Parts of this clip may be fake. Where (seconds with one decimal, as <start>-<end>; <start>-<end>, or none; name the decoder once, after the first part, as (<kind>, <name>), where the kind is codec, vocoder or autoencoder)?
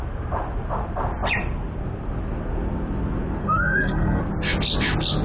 3.4-4.2 (codec, SNAC)